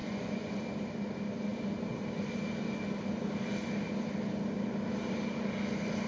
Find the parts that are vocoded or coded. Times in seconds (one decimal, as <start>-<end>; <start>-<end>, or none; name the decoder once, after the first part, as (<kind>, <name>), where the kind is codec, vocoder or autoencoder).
0.0-0.6 (vocoder, Vocos)